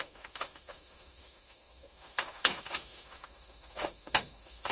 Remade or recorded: remade